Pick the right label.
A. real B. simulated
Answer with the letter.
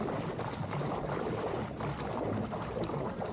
A